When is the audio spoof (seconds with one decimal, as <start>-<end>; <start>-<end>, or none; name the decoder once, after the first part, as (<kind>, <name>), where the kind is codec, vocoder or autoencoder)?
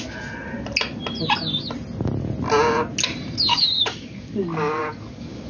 3.5-5.5 (codec, DAC)